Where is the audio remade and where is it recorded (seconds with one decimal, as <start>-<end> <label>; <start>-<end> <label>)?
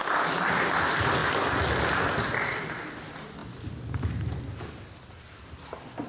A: 0.0-6.1 recorded